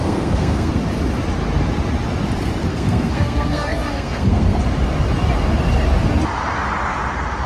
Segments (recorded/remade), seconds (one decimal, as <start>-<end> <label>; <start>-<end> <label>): 0.0-0.7 remade; 0.7-2.7 recorded; 2.7-4.6 remade; 4.6-7.5 recorded